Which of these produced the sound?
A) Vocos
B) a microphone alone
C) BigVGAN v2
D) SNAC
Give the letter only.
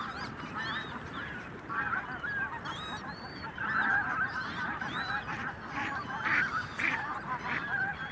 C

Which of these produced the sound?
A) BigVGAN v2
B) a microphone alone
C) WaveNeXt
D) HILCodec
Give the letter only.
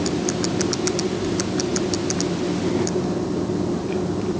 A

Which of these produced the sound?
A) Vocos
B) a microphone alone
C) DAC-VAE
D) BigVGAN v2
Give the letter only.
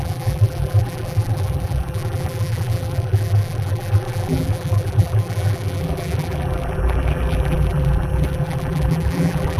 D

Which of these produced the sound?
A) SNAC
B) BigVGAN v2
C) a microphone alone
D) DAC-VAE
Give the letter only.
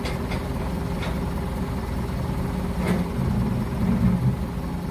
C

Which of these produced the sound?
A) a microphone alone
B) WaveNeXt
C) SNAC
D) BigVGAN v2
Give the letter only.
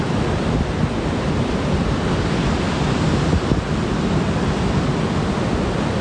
A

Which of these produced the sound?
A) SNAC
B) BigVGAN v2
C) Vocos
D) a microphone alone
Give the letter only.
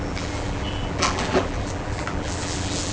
B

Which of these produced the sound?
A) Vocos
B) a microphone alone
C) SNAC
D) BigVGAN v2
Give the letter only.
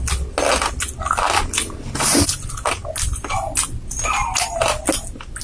B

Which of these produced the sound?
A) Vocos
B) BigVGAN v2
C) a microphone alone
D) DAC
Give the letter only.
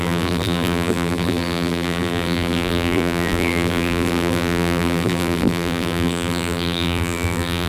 B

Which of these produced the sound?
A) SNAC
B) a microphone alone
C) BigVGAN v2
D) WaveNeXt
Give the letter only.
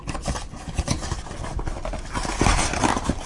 B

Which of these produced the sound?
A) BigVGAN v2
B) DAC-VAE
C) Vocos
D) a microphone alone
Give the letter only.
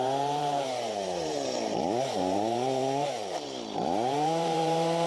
A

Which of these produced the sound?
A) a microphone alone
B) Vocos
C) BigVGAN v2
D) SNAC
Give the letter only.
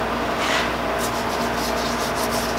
A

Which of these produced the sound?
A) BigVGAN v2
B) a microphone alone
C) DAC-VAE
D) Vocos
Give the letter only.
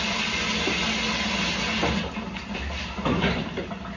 B